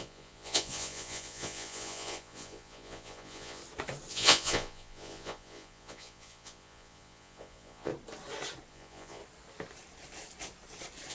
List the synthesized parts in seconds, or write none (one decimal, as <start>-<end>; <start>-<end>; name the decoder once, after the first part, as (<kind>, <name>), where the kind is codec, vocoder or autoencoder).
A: 0.0-3.6 (vocoder, Vocos); 4.1-7.9; 8.7-9.2